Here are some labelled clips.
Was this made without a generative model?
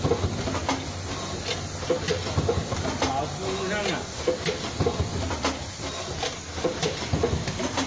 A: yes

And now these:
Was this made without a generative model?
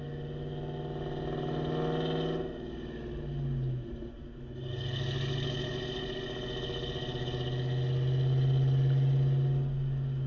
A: yes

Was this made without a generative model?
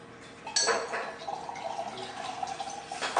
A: yes